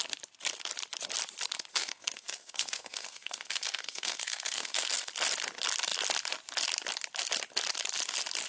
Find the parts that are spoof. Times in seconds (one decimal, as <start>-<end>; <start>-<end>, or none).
1.7-5.1